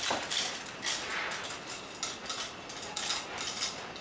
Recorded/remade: recorded